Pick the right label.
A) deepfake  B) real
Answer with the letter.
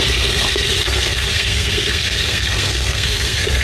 A